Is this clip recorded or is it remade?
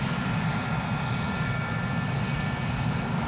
recorded